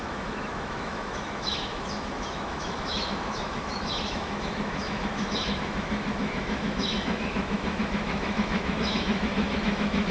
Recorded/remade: remade